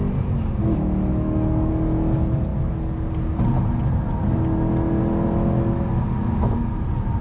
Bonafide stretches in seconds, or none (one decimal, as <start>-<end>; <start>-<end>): 0.0-1.1; 1.7-7.2